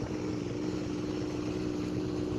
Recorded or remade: recorded